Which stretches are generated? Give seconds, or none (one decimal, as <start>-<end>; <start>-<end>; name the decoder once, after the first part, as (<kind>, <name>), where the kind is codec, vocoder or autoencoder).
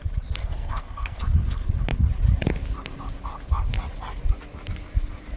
0.4-1.2 (codec, SNAC)